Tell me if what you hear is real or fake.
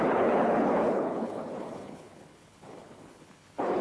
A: fake